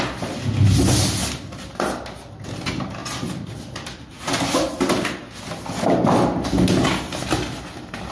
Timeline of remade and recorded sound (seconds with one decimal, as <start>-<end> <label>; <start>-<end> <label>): 0.0-8.1 recorded